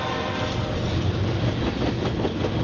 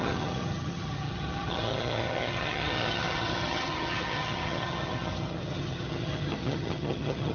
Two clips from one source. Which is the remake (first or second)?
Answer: second